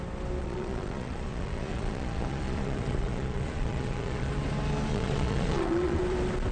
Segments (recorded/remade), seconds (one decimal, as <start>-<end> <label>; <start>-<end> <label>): 0.0-0.4 recorded; 0.4-4.3 remade; 4.3-4.9 recorded; 4.9-6.0 remade; 6.0-6.5 recorded

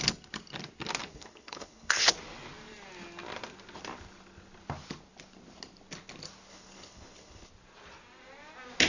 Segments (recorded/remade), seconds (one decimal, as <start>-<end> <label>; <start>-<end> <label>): 0.0-1.0 recorded; 1.0-2.1 remade; 2.1-6.5 recorded; 6.5-7.5 remade; 7.5-8.9 recorded

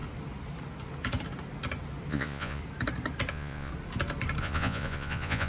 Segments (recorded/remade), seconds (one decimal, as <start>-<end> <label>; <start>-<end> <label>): 0.0-2.1 recorded; 2.1-2.6 remade; 2.6-3.3 recorded; 3.3-3.7 remade; 3.7-4.4 recorded; 4.4-5.5 remade

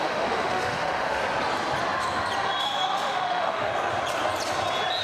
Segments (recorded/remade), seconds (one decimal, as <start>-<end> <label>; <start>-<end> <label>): 0.0-1.2 remade; 1.2-2.6 recorded; 2.6-3.7 remade; 3.7-5.0 recorded

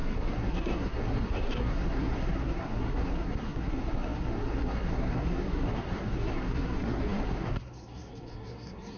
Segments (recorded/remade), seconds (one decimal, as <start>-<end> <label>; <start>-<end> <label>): 0.0-9.0 remade

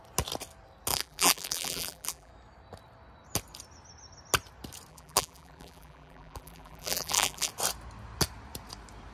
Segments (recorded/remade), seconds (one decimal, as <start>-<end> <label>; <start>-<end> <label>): 0.0-0.9 recorded; 0.9-2.3 remade; 2.3-4.9 recorded; 4.9-7.5 remade; 7.5-9.1 recorded

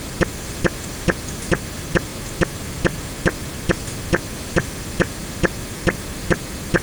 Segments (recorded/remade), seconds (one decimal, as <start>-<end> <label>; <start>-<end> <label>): 0.0-2.1 remade; 2.1-3.2 recorded; 3.2-6.8 remade

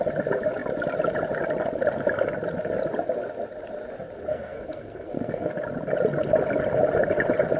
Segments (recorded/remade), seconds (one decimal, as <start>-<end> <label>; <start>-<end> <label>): 0.0-4.3 recorded; 4.3-5.5 remade; 5.5-7.6 recorded